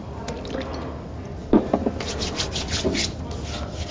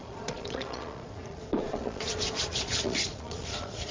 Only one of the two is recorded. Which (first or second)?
first